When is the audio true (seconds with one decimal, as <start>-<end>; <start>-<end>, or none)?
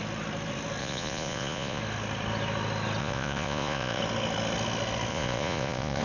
0.0-0.8; 1.8-3.0; 4.0-5.1